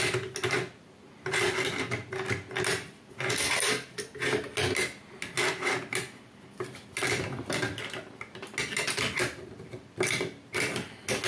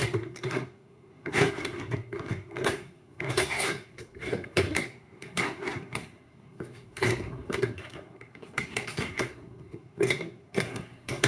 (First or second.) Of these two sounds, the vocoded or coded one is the second